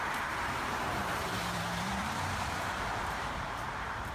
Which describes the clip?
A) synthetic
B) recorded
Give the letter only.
A